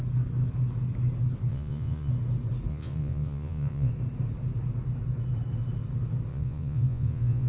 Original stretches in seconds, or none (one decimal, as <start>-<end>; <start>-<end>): 0.0-1.5; 2.1-2.7; 3.9-6.3